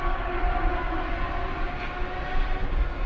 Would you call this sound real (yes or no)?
yes